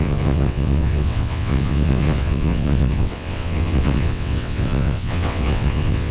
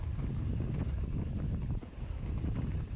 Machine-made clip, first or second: first